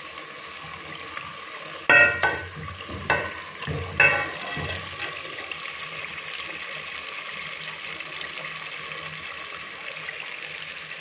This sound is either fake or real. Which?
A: real